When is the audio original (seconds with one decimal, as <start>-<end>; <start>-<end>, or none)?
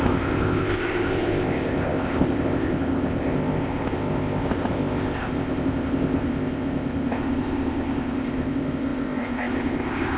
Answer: none